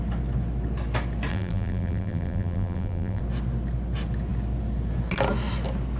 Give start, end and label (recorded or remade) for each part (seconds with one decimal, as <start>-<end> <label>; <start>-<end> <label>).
0.0-1.3 recorded; 1.3-3.2 remade; 3.2-6.0 recorded

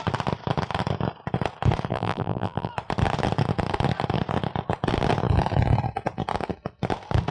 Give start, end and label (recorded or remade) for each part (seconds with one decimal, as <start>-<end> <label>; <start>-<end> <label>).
0.0-1.9 recorded; 1.9-2.7 remade; 2.7-7.3 recorded

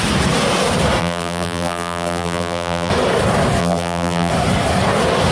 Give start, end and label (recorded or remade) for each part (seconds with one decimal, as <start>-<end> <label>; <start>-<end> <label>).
0.0-1.0 recorded; 1.0-2.9 remade; 2.9-3.6 recorded; 3.6-4.3 remade; 4.3-5.3 recorded

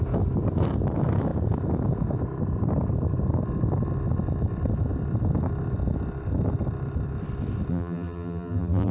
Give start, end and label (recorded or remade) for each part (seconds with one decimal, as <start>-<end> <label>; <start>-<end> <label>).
0.0-7.7 recorded; 7.7-8.9 remade